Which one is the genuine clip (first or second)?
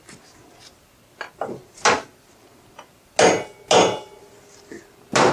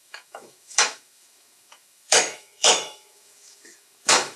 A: first